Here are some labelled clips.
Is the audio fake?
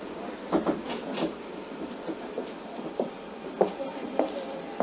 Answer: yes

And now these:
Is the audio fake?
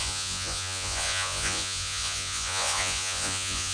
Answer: yes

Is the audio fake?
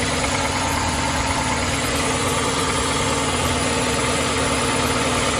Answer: yes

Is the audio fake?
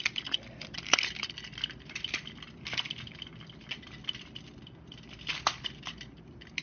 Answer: no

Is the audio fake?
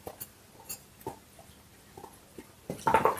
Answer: no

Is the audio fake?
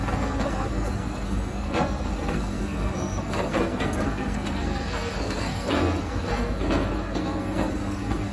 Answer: yes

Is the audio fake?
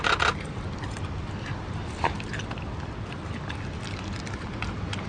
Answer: no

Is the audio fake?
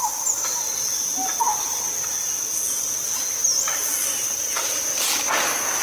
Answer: no